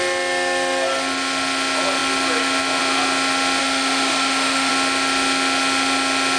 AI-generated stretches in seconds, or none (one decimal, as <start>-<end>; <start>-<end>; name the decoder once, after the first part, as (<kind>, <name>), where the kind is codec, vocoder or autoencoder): 3.6-4.7 (autoencoder, DAC-VAE)